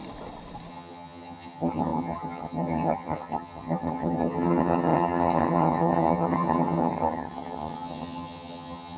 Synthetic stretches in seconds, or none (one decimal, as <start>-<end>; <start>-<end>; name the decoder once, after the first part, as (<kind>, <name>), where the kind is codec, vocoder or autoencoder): 0.7-9.0 (vocoder, HiFi-GAN)

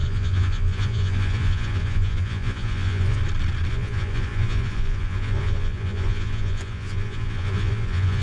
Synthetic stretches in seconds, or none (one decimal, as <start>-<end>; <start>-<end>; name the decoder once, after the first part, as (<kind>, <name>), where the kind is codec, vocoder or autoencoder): 0.0-3.2 (vocoder, Vocos); 3.7-8.2

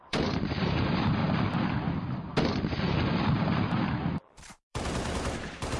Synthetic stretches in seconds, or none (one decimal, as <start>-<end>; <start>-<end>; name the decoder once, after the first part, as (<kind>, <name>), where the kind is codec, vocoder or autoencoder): 0.0-1.2 (vocoder, BigVGAN v2); 4.7-5.8

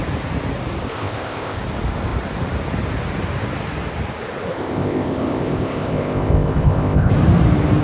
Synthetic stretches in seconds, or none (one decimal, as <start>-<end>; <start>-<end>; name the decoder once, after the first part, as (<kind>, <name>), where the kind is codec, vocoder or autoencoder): 0.9-1.6 (codec, ZipCodec); 4.5-7.1

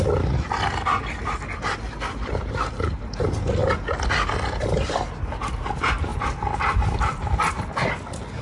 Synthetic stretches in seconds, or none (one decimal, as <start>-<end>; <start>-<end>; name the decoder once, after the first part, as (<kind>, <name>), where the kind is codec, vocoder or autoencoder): none

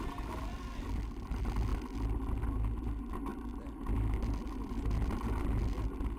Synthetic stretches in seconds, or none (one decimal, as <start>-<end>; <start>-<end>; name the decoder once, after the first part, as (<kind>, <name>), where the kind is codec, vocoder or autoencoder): none